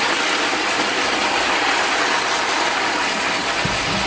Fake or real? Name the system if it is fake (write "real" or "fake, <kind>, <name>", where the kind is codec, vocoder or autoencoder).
real